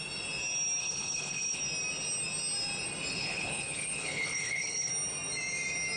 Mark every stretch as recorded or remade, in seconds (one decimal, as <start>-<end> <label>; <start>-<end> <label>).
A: 0.0-0.8 recorded; 0.8-1.6 remade; 1.6-3.1 recorded; 3.1-4.9 remade; 4.9-6.0 recorded